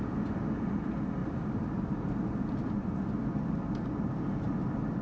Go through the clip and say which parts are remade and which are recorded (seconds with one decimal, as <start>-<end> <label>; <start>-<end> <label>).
0.0-1.2 recorded; 1.2-2.3 remade; 2.3-5.0 recorded